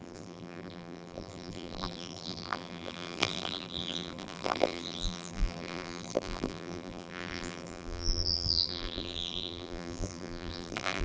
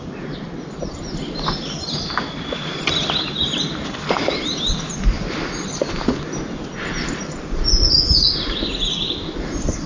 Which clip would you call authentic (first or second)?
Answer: second